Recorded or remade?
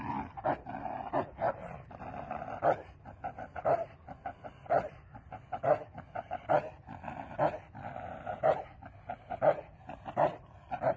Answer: recorded